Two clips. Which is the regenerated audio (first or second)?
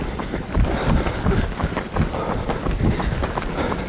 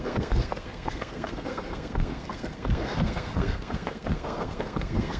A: second